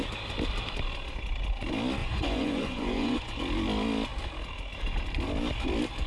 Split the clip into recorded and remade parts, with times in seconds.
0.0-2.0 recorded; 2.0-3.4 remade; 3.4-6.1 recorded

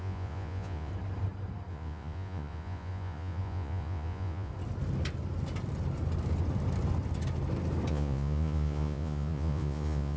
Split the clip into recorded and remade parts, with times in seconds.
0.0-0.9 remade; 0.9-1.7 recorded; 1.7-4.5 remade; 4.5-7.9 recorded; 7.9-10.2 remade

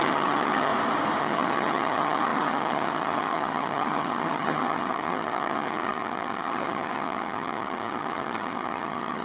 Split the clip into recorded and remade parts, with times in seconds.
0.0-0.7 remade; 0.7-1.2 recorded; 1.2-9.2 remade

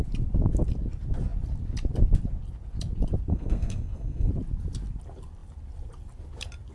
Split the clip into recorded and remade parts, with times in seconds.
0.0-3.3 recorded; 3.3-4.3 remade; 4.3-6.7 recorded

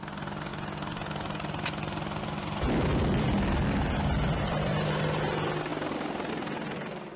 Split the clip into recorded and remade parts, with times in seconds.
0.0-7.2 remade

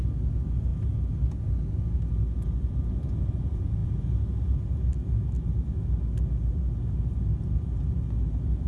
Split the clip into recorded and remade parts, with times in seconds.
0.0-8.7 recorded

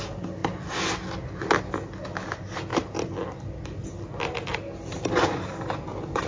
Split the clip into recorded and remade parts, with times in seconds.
0.0-6.3 recorded

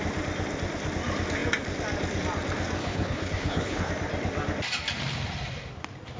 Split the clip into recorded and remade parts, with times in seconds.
0.0-2.8 recorded; 2.8-3.9 remade; 3.9-6.2 recorded